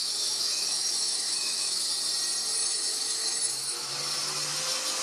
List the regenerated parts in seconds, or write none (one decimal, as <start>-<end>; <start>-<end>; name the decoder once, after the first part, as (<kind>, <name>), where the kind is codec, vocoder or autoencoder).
0.0-1.9 (autoencoder, DAC-VAE); 2.6-3.9